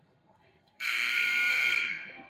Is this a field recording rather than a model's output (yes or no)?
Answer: no